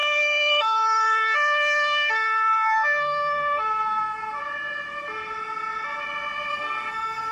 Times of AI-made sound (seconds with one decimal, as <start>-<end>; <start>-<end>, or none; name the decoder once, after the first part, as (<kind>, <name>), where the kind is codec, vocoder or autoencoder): 0.0-4.4 (codec, SNAC); 6.5-7.3

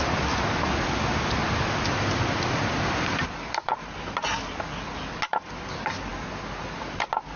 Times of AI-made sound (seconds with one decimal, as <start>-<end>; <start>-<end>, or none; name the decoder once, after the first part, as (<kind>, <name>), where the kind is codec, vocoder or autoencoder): none